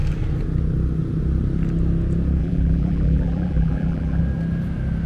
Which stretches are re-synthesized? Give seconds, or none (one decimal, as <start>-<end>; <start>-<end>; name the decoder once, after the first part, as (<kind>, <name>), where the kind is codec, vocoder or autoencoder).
2.4-4.2 (vocoder, BigVGAN v2)